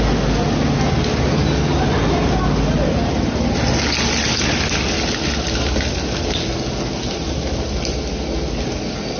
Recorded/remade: recorded